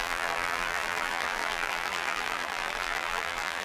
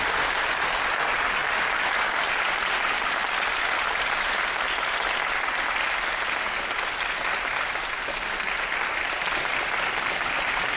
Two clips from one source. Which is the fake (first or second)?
first